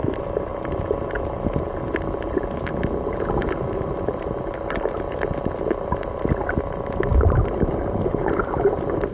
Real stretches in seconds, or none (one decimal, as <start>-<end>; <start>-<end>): 0.0-9.1